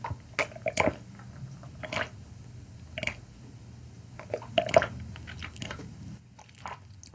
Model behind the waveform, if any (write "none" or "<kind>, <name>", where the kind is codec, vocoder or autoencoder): none